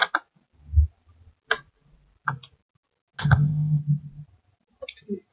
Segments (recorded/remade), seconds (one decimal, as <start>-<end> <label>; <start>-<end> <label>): 0.0-3.2 recorded; 3.2-3.8 remade; 3.8-5.3 recorded